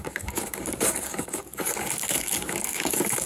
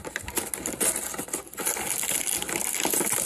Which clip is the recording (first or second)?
second